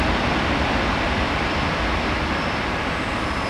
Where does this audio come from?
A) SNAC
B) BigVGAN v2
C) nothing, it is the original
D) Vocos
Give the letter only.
C